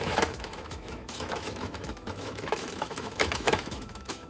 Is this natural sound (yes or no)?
no